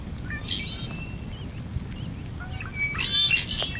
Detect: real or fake real